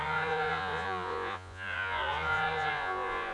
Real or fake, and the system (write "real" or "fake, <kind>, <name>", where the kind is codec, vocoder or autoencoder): fake, vocoder, Vocos